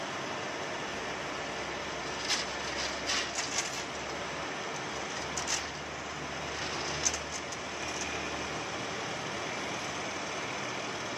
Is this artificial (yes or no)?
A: no